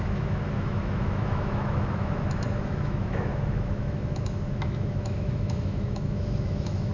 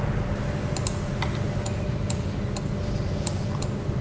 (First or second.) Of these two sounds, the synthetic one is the first